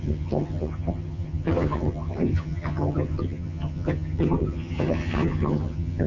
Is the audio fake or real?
fake